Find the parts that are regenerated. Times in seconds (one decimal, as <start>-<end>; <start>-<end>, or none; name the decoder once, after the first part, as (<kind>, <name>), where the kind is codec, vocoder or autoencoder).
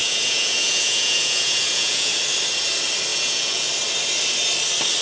0.0-2.1 (vocoder, Vocos); 3.1-3.7